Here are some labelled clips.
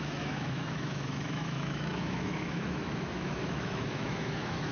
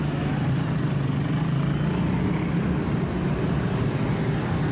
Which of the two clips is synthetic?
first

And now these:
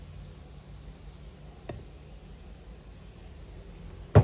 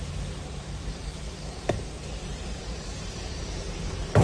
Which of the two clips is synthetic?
second